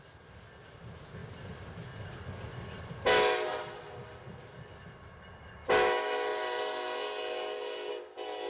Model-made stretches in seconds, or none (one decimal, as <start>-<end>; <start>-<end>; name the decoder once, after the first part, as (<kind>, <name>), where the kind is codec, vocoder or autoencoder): none